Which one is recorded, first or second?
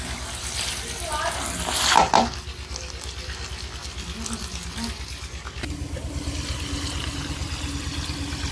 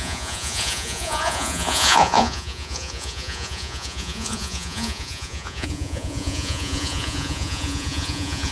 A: first